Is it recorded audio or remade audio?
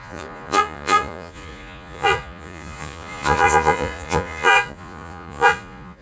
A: remade